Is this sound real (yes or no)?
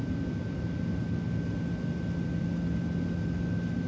yes